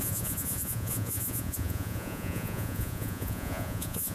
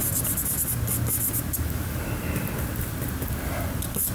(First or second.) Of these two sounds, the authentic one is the second